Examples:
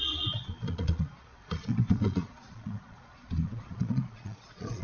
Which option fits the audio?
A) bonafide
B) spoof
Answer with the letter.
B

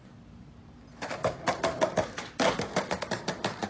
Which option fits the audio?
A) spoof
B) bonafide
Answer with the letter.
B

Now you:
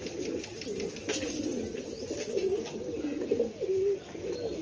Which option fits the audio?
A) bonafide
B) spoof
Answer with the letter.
A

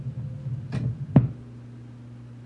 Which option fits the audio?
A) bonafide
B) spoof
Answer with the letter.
A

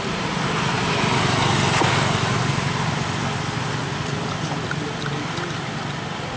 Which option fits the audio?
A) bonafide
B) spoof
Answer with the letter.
A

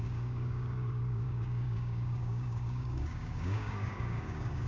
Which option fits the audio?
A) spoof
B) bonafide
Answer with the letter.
A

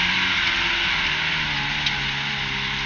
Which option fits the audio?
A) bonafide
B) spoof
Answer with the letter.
A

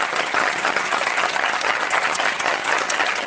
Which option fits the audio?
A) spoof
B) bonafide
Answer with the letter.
A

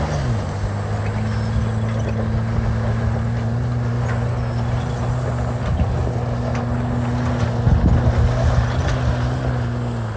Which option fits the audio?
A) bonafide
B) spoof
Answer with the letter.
A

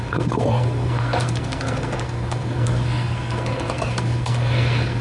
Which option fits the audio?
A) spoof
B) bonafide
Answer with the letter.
A